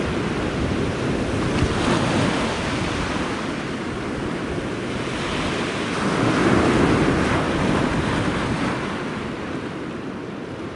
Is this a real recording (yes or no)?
yes